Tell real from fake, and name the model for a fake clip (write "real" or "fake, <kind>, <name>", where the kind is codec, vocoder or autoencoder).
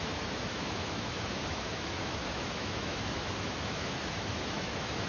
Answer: fake, autoencoder, DAC-VAE